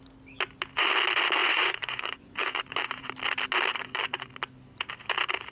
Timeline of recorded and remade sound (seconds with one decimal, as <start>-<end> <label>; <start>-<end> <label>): 0.0-1.4 recorded; 1.4-3.1 remade; 3.1-3.7 recorded; 3.7-4.3 remade; 4.3-5.5 recorded